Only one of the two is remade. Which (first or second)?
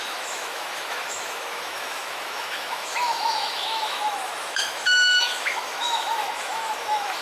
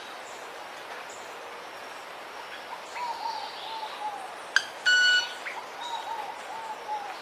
first